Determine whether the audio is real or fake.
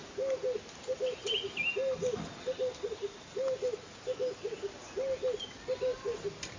real